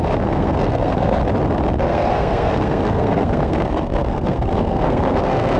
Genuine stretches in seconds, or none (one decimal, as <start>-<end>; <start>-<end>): 1.2-1.8